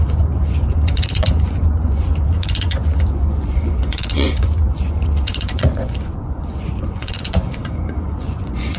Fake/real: fake